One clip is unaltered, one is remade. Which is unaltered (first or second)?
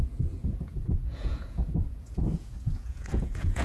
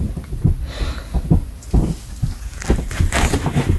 second